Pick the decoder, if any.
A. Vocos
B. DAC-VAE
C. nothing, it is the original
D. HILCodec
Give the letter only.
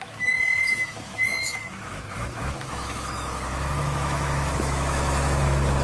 B